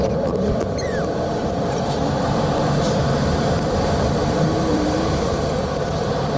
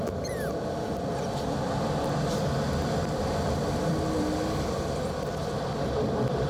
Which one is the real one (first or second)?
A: second